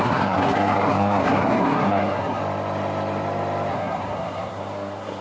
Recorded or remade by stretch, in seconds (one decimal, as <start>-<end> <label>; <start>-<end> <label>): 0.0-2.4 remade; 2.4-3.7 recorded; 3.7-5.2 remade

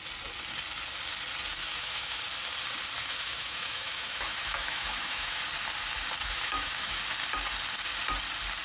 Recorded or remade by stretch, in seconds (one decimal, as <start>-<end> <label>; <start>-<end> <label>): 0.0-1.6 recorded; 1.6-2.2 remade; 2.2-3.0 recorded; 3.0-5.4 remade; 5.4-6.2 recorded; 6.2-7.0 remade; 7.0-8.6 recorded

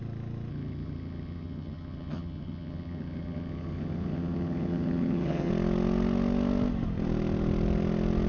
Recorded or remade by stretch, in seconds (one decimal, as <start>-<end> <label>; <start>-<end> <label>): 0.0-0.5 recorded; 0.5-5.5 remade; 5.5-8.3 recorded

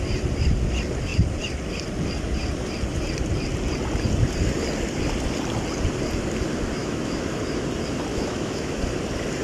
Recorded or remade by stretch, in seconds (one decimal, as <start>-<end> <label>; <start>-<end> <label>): 0.0-6.8 recorded; 6.8-7.4 remade; 7.4-8.1 recorded; 8.1-8.8 remade; 8.8-9.4 recorded